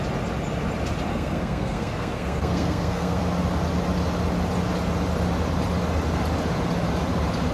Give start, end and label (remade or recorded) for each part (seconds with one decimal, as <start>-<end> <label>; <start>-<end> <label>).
0.0-1.1 recorded; 1.1-3.2 remade; 3.2-7.5 recorded

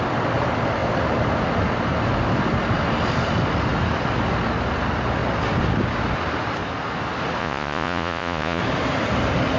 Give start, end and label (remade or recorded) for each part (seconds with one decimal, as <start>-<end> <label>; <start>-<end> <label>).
0.0-7.4 recorded; 7.4-8.6 remade; 8.6-9.6 recorded

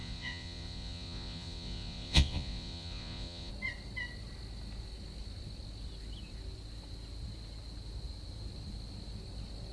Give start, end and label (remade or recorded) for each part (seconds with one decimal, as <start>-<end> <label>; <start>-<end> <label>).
0.0-3.5 remade; 3.5-9.7 recorded

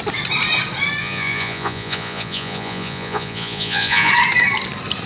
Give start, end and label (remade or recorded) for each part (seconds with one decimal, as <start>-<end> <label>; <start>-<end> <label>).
0.0-1.0 recorded; 1.0-4.1 remade; 4.1-5.1 recorded

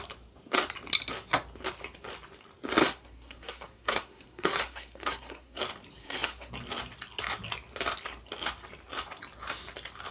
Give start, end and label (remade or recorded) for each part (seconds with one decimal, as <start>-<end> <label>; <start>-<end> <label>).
0.0-2.8 recorded; 2.8-5.6 remade; 5.6-6.0 recorded; 6.0-6.5 remade; 6.5-10.1 recorded

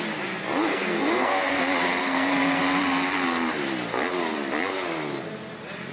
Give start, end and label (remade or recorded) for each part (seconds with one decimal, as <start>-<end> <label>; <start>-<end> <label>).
0.0-0.7 recorded; 0.7-1.6 remade; 1.6-2.0 recorded; 2.0-2.6 remade; 2.6-5.9 recorded

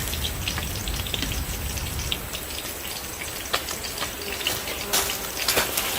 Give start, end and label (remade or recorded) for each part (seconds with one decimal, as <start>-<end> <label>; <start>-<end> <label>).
0.0-6.0 recorded